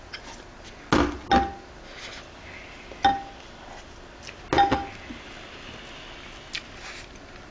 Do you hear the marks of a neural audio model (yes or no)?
no